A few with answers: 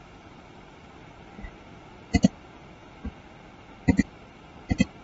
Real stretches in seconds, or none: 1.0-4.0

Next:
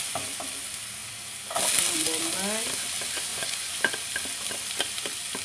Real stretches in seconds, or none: 0.0-3.3; 3.9-5.4

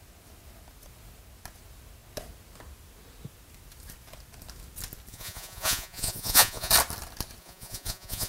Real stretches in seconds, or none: 0.0-5.1; 6.7-7.4

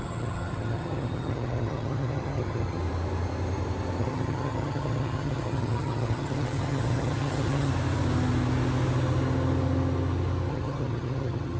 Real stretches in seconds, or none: 2.8-4.0; 7.7-10.5